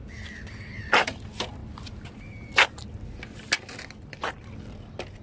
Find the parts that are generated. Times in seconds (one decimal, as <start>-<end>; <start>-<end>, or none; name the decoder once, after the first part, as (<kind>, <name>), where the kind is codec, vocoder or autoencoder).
none